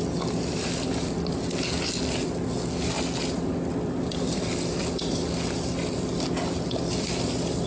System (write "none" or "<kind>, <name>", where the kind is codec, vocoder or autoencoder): none